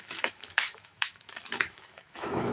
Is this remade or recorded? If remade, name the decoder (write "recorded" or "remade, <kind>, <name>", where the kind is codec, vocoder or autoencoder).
remade, autoencoder, DAC-VAE